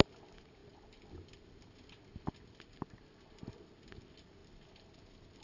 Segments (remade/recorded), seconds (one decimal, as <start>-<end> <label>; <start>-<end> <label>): 0.0-5.4 recorded